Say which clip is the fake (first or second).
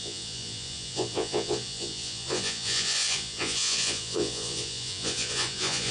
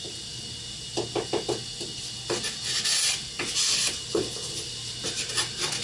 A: first